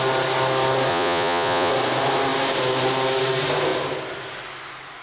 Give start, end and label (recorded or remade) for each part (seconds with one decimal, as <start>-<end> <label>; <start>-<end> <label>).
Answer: 0.0-0.9 recorded; 0.9-1.7 remade; 1.7-5.0 recorded